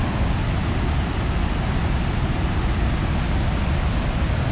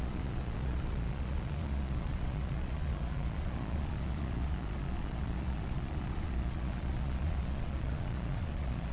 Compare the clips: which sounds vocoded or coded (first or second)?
second